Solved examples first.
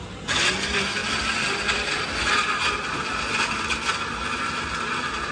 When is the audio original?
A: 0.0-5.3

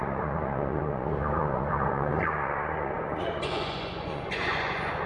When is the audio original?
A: none

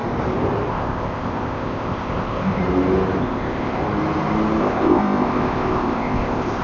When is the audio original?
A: 0.0-0.7; 2.6-3.2; 3.8-4.6